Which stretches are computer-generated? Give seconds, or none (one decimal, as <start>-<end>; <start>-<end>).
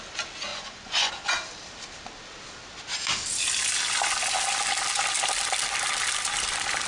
0.5-1.1